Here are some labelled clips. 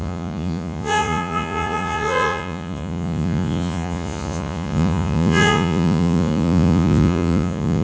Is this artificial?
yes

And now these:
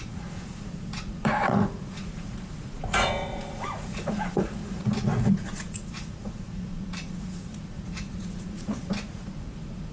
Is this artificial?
yes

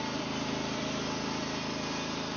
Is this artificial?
yes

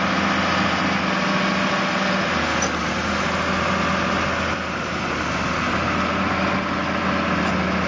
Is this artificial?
no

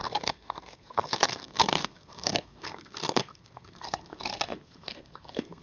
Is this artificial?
yes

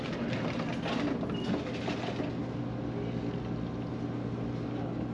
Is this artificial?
no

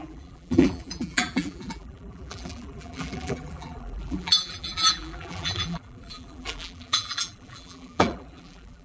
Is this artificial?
yes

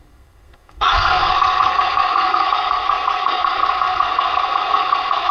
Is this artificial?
yes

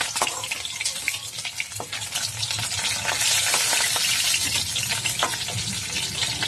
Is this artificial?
no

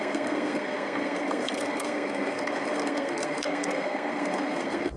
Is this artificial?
yes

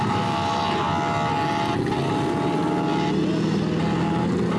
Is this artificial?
no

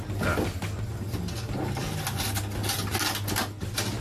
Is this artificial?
no